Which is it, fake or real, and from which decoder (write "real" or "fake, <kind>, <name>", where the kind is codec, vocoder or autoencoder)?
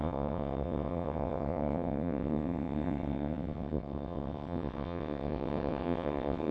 fake, vocoder, WaveNeXt